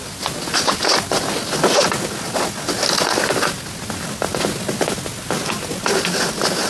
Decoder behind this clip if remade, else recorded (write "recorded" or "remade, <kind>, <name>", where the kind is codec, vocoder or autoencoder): recorded